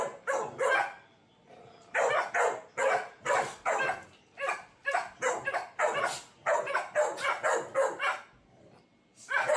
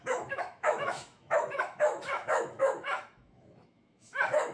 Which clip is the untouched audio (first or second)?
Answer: first